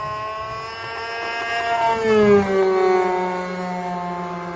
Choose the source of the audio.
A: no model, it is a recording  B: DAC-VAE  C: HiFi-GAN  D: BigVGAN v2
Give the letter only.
A